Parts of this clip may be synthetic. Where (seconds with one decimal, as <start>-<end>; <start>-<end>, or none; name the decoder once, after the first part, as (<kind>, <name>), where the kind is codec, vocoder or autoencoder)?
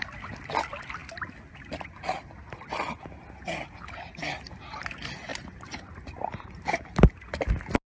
5.3-6.7 (vocoder, BigVGAN v2)